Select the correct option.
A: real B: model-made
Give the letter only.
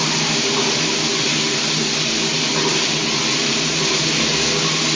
A